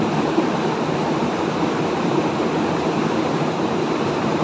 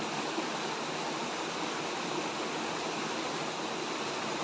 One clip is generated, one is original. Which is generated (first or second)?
first